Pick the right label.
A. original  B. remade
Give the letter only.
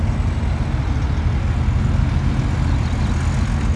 A